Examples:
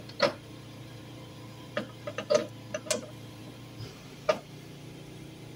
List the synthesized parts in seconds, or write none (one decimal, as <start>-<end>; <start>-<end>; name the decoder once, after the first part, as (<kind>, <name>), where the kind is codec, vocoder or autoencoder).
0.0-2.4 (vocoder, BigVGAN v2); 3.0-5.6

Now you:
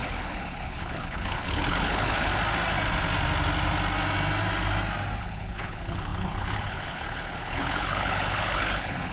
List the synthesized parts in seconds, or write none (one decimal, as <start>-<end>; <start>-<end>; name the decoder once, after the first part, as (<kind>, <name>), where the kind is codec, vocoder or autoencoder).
0.0-2.3 (codec, HILCodec); 5.2-9.1

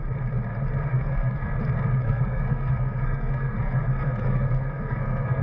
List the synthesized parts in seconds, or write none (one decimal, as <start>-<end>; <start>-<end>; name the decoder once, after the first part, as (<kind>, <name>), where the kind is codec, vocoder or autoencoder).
0.9-1.6 (codec, SNAC); 2.0-5.4